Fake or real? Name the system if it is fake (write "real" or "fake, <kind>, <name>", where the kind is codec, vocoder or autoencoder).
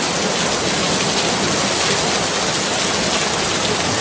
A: real